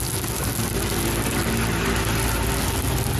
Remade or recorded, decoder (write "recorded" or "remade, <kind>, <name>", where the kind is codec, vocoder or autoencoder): recorded